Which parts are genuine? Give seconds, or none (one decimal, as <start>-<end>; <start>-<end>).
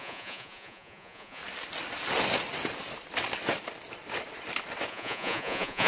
1.4-4.9